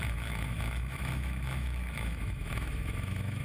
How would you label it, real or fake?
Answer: fake